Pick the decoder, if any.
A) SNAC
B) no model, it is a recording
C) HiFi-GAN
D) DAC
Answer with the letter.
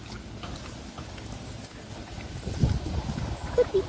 B